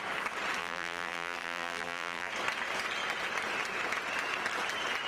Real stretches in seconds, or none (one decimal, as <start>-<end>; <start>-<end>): 0.0-0.6; 2.3-5.1